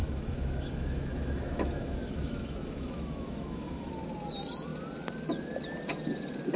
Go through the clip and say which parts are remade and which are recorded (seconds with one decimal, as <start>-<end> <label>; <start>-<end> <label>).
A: 0.0-3.9 remade; 3.9-6.6 recorded